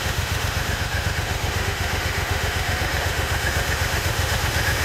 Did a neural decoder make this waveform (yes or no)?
yes